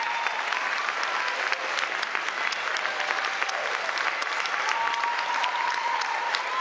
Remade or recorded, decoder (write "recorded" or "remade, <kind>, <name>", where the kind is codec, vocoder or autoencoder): recorded